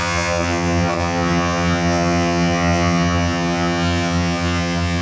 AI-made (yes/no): yes